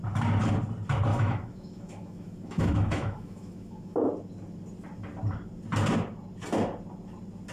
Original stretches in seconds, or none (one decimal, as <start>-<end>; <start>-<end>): 0.0-1.1; 4.1-7.5